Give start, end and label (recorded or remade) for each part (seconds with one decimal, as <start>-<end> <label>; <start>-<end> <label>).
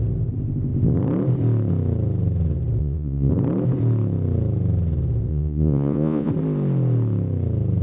0.0-2.8 recorded; 2.8-3.3 remade; 3.3-5.3 recorded; 5.3-6.3 remade; 6.3-7.8 recorded